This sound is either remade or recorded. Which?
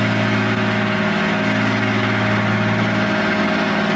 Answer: recorded